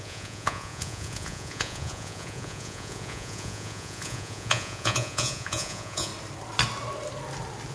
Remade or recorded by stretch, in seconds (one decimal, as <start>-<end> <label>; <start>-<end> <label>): 0.0-6.1 remade; 6.1-7.7 recorded